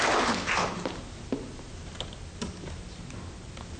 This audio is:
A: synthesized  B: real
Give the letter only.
B